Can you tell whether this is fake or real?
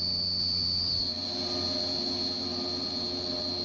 real